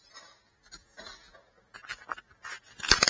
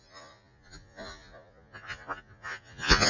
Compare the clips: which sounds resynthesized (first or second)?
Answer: second